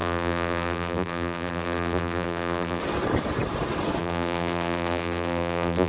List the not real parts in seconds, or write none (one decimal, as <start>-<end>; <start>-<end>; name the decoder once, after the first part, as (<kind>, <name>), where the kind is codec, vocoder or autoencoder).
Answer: 0.0-2.8 (vocoder, BigVGAN v2); 4.0-5.9

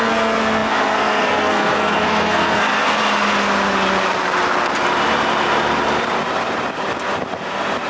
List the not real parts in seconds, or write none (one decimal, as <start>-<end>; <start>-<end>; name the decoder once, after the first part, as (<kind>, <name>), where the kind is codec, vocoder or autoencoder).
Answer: 0.0-3.0 (codec, SNAC)

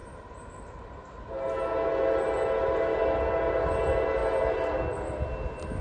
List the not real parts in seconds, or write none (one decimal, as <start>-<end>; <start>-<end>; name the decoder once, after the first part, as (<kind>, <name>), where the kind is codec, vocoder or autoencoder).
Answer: none